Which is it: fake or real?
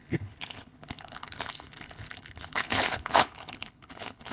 fake